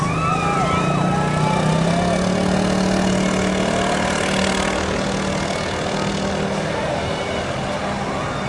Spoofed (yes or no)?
no